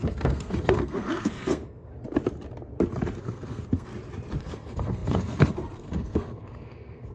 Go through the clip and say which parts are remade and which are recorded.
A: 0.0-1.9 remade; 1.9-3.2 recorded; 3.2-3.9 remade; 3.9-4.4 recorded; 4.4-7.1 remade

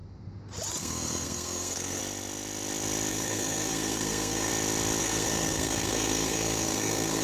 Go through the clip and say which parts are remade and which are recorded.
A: 0.0-0.8 recorded; 0.8-2.0 remade; 2.0-3.1 recorded; 3.1-4.5 remade; 4.5-5.0 recorded; 5.0-7.2 remade

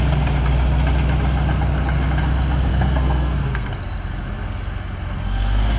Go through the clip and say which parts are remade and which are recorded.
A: 0.0-2.7 recorded; 2.7-3.7 remade; 3.7-5.2 recorded; 5.2-5.8 remade

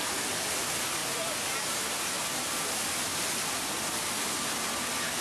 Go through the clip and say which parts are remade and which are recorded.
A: 0.0-5.2 recorded

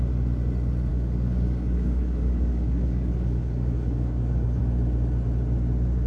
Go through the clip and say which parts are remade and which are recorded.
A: 0.0-0.9 recorded; 0.9-4.6 remade; 4.6-6.1 recorded